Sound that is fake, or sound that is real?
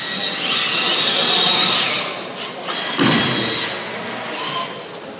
real